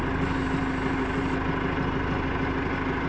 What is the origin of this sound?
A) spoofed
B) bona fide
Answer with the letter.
B